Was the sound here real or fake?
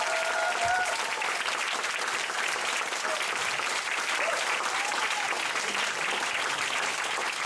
real